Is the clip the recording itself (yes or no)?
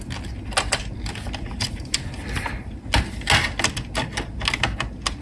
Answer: yes